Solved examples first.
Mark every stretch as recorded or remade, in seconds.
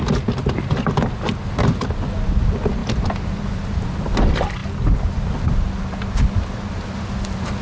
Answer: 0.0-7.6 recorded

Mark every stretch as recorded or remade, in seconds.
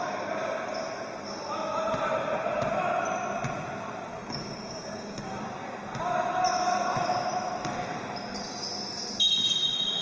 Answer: 0.0-4.1 recorded; 4.1-5.4 remade; 5.4-10.0 recorded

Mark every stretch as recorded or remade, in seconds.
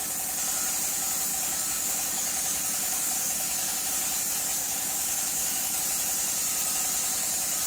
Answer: 0.0-1.3 recorded; 1.3-3.9 remade; 3.9-4.6 recorded; 4.6-5.8 remade; 5.8-7.7 recorded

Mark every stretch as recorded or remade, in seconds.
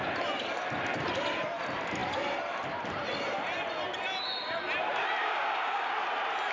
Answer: 0.0-5.2 recorded; 5.2-5.9 remade; 5.9-6.5 recorded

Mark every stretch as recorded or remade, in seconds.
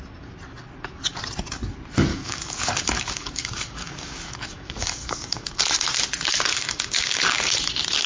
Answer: 0.0-2.1 recorded; 2.1-5.6 remade; 5.6-6.5 recorded; 6.5-7.6 remade; 7.6-8.1 recorded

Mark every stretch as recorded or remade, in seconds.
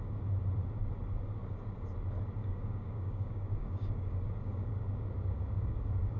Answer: 0.0-2.4 recorded; 2.4-6.2 remade